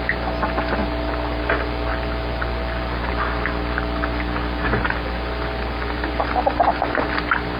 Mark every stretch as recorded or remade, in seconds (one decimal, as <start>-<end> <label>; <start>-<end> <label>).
0.0-7.6 recorded